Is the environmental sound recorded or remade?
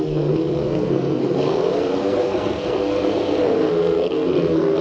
remade